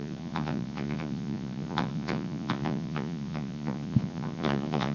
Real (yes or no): no